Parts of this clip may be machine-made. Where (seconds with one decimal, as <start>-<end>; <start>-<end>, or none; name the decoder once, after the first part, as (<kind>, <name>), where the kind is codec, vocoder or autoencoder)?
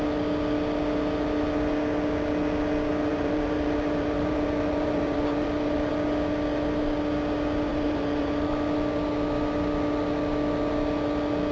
3.1-5.9 (vocoder, BigVGAN v2); 7.7-8.5